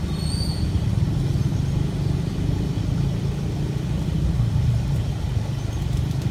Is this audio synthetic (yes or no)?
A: no